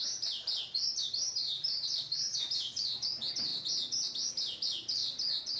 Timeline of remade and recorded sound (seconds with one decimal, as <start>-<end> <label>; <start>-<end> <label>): 0.0-0.9 recorded; 0.9-3.0 remade; 3.0-5.6 recorded